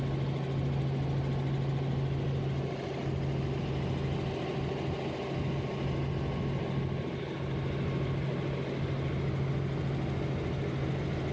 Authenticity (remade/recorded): recorded